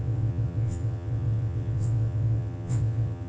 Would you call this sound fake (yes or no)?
yes